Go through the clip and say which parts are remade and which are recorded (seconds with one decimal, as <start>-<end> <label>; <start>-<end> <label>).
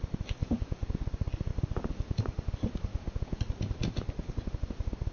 0.0-0.4 recorded; 0.4-1.0 remade; 1.0-2.9 recorded; 2.9-3.4 remade; 3.4-5.1 recorded